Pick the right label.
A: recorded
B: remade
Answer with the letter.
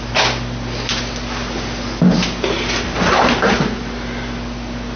A